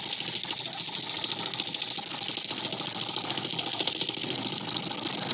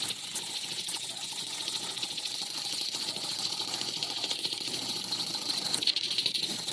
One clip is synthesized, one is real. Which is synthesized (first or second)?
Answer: second